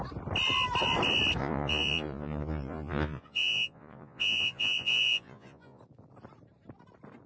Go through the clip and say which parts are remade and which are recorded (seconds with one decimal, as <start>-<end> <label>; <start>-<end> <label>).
0.0-1.4 recorded; 1.4-5.8 remade; 5.8-7.3 recorded